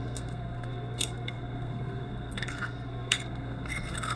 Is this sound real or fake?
fake